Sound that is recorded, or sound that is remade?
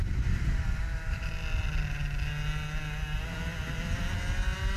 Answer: recorded